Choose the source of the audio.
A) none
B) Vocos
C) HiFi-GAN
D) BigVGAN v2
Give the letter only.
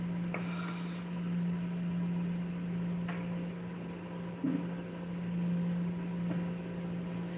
A